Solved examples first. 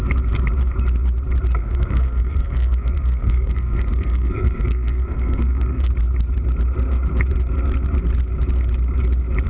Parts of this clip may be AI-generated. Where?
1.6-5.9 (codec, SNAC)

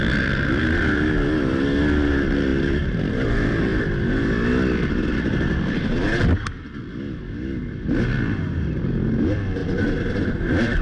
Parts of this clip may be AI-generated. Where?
none

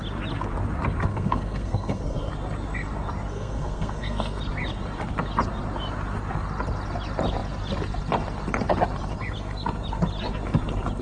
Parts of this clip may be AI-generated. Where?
1.1-2.3 (codec, SNAC); 3.3-4.4

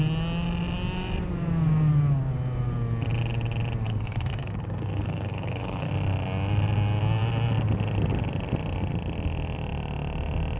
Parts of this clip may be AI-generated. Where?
3.9-5.9 (codec, SNAC)

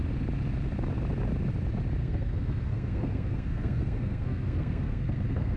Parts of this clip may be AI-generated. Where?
2.0-5.6 (codec, SNAC)

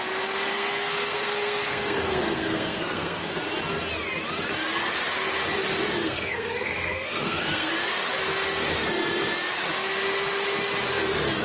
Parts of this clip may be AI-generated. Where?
0.5-3.3 (codec, SNAC); 6.0-7.7

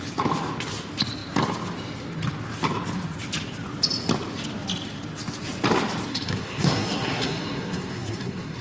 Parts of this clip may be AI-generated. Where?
6.1-8.6 (codec, SNAC)

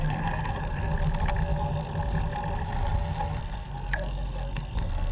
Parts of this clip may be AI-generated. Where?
0.0-0.9 (codec, SNAC); 3.4-5.1